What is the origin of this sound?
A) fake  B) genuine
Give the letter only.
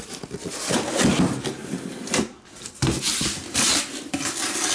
B